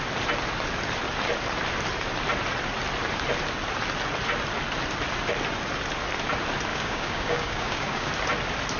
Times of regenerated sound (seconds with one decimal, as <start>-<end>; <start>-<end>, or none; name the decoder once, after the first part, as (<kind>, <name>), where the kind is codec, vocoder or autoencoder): 6.7-8.1 (codec, DAC)